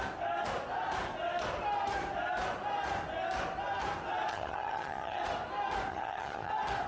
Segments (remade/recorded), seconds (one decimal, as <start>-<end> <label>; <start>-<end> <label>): 0.0-4.3 recorded; 4.3-5.2 remade; 5.2-5.9 recorded; 5.9-6.5 remade; 6.5-6.9 recorded